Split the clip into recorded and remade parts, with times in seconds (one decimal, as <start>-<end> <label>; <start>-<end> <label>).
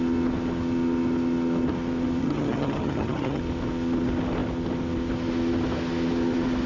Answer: 0.0-2.2 recorded; 2.2-3.4 remade; 3.4-6.7 recorded